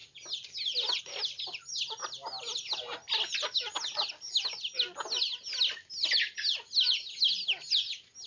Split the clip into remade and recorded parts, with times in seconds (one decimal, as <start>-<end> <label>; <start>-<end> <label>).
0.0-8.3 recorded